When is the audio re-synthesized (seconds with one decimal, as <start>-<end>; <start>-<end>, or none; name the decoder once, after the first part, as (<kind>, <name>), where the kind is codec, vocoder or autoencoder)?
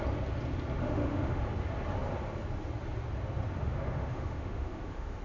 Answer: 0.8-1.4 (autoencoder, DAC-VAE); 3.6-5.2